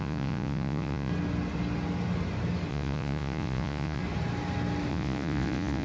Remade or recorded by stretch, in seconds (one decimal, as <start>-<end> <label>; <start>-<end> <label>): 0.0-1.1 remade; 1.1-2.7 recorded; 2.7-4.0 remade; 4.0-4.9 recorded; 4.9-5.8 remade